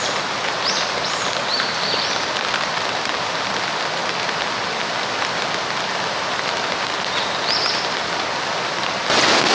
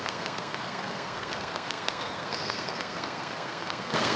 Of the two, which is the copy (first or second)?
second